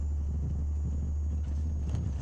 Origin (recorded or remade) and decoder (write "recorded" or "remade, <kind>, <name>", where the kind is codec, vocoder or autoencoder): recorded